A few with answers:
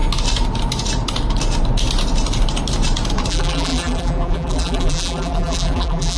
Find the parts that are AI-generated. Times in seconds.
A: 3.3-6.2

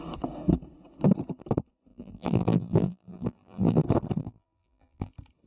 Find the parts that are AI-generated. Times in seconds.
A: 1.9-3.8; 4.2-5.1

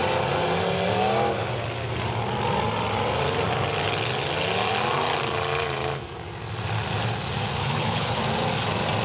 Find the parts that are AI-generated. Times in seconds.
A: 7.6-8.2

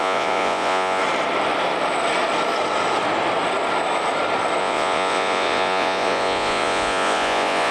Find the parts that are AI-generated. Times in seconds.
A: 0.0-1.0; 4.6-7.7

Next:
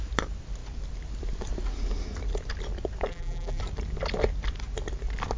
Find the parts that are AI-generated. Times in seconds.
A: 3.1-3.6

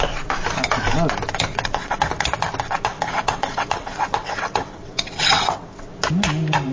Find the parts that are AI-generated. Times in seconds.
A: 1.5-2.3; 3.1-5.9

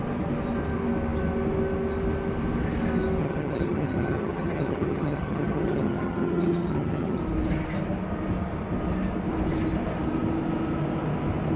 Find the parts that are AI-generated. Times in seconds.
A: 3.2-7.2